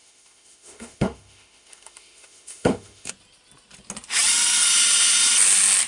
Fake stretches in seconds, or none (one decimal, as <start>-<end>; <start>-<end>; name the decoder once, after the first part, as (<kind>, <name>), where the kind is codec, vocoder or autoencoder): 0.0-3.1 (autoencoder, DAC-VAE)